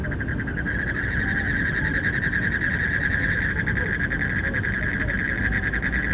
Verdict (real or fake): real